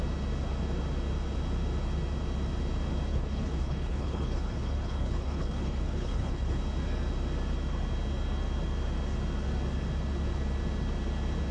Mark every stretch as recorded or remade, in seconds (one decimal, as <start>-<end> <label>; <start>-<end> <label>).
0.0-3.1 recorded; 3.1-6.6 remade; 6.6-11.5 recorded